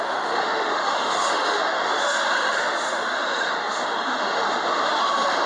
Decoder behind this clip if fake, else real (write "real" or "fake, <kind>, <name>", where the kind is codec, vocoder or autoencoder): fake, autoencoder, DAC-VAE